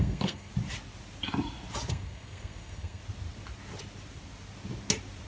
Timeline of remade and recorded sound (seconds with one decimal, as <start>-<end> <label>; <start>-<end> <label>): 0.0-0.5 remade; 0.5-1.9 recorded; 1.9-3.0 remade; 3.0-5.3 recorded